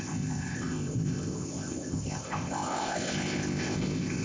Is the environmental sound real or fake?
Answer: fake